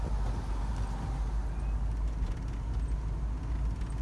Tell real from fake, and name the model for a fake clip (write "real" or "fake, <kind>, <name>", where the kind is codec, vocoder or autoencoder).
real